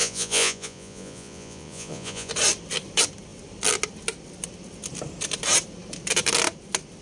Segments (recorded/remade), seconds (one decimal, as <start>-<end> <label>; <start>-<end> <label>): 0.0-2.3 remade; 2.3-7.0 recorded